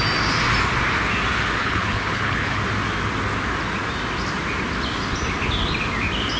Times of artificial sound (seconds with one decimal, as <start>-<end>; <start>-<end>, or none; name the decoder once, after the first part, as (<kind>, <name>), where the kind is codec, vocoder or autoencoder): 1.6-2.6 (codec, HILCodec)

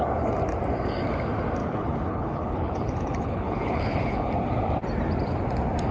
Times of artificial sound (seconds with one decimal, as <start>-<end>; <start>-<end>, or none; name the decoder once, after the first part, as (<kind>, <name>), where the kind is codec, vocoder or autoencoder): 1.6-4.3 (codec, HILCodec)